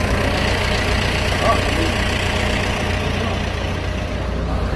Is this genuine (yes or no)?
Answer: yes